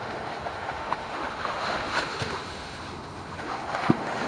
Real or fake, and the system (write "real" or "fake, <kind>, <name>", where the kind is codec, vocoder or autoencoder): fake, autoencoder, DAC-VAE